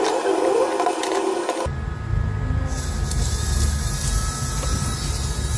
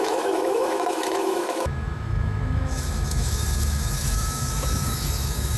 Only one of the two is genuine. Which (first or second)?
first